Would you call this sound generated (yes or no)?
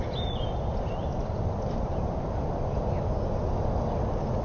no